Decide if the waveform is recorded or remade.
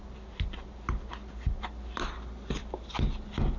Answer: recorded